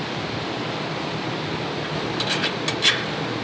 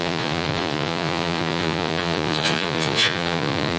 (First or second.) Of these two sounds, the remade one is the second